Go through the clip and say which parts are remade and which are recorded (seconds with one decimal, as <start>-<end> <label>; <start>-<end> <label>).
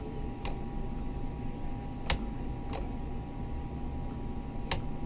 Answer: 0.0-5.1 recorded